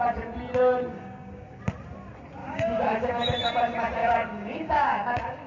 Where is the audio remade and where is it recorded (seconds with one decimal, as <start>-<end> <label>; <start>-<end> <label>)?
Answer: 0.0-0.9 recorded; 0.9-1.6 remade; 1.6-2.4 recorded; 2.4-3.5 remade; 3.5-4.0 recorded; 4.0-5.5 remade